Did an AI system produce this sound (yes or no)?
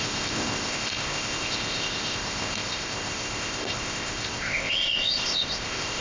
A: yes